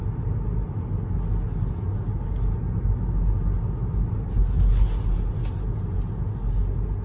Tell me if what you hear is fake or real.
real